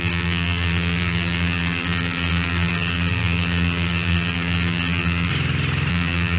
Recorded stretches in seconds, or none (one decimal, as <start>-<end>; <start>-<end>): 5.3-5.9